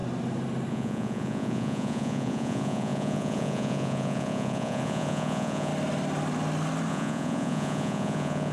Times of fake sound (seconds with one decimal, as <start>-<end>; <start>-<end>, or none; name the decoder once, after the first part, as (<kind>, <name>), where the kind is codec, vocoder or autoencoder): 0.7-5.7 (vocoder, Vocos); 6.9-8.5

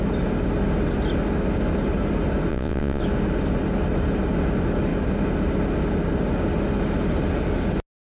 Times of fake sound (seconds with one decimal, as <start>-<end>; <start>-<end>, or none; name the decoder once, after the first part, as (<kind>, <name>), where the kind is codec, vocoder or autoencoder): 2.5-3.0 (vocoder, Vocos)

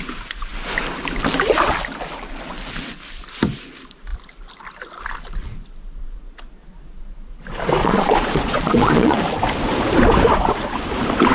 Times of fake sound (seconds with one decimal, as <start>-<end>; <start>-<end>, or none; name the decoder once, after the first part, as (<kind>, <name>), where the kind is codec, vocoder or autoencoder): 7.8-9.2 (vocoder, Vocos)